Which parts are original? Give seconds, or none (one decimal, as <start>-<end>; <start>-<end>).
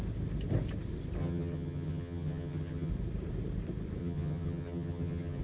0.0-1.2; 2.9-4.0